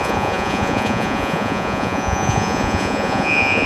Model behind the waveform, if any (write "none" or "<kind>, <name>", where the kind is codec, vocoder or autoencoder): vocoder, Vocos